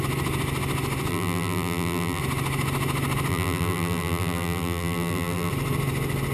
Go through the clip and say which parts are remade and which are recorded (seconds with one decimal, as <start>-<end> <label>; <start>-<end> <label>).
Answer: 0.0-1.1 recorded; 1.1-2.2 remade; 2.2-3.3 recorded; 3.3-5.5 remade; 5.5-6.3 recorded